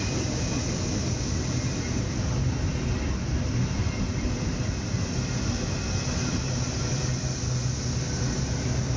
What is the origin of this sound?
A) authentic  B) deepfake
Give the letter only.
A